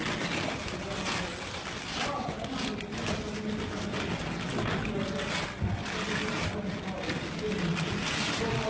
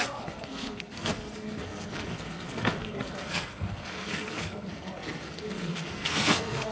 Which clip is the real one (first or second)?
first